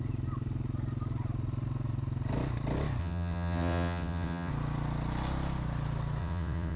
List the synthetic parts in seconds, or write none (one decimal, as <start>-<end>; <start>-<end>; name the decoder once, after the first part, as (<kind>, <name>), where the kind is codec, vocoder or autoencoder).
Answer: 3.0-4.5 (vocoder, WaveNeXt); 6.2-6.8